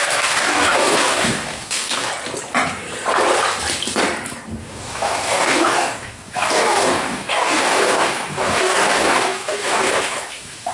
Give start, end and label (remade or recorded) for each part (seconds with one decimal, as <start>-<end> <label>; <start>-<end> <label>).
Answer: 0.0-2.1 remade; 2.1-4.6 recorded; 4.6-10.7 remade